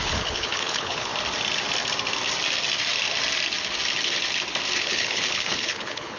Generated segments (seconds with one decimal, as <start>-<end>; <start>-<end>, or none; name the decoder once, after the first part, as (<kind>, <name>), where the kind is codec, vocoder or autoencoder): 0.0-1.1 (codec, HILCodec); 4.8-6.2